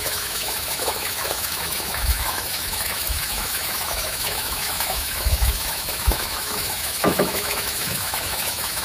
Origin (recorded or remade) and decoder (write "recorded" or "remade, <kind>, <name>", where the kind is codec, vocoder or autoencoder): remade, autoencoder, DAC-VAE